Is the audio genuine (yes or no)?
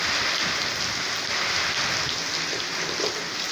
yes